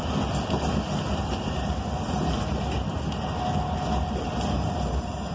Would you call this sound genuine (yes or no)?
yes